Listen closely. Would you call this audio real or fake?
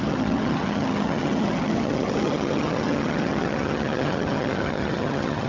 fake